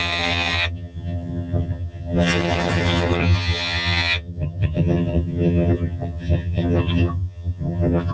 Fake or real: fake